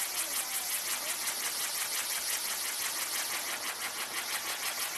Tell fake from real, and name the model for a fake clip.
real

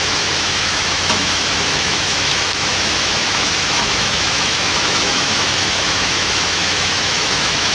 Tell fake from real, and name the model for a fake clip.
fake, autoencoder, DAC-VAE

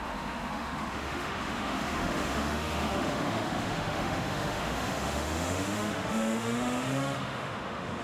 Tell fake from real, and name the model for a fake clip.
fake, autoencoder, DAC-VAE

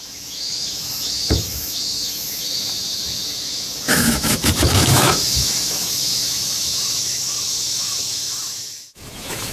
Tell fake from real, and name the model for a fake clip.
fake, autoencoder, DAC-VAE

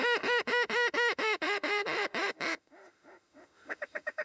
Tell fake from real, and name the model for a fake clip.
fake, autoencoder, DAC-VAE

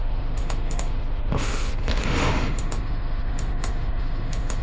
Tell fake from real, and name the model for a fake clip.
fake, autoencoder, DAC-VAE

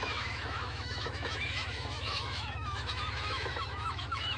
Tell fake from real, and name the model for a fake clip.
fake, autoencoder, DAC-VAE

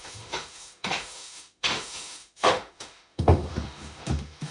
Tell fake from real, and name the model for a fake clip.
fake, autoencoder, DAC-VAE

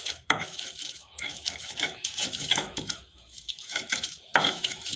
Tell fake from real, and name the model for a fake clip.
fake, autoencoder, DAC-VAE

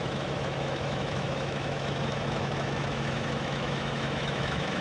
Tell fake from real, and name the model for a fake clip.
fake, autoencoder, DAC-VAE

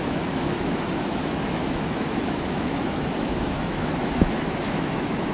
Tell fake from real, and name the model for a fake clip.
fake, autoencoder, DAC-VAE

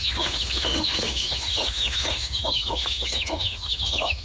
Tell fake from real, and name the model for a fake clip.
fake, autoencoder, DAC-VAE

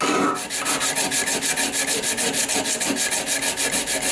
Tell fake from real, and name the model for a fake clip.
real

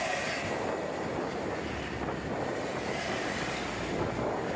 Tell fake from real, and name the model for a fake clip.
real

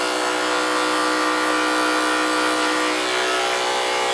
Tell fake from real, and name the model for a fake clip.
real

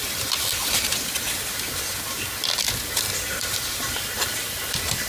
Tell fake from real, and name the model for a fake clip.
real